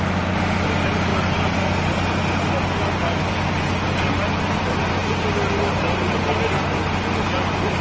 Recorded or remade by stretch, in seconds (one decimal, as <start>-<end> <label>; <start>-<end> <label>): 0.0-7.8 recorded